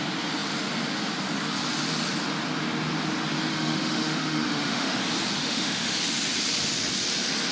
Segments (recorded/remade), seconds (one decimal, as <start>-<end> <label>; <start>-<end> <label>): 0.0-3.5 recorded; 3.5-5.0 remade; 5.0-5.4 recorded; 5.4-6.0 remade; 6.0-7.5 recorded